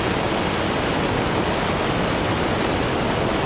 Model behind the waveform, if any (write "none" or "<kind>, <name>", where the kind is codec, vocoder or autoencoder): none